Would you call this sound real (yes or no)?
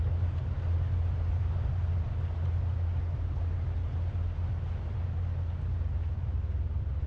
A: yes